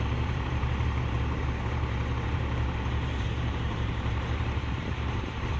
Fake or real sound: fake